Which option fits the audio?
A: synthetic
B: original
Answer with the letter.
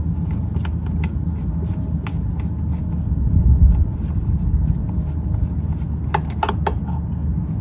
B